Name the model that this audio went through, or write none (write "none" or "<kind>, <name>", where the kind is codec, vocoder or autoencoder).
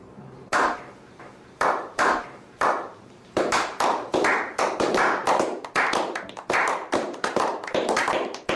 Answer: vocoder, BigVGAN v2